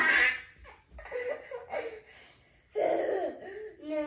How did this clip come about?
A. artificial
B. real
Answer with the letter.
B